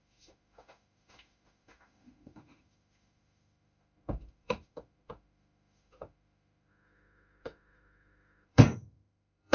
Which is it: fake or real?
fake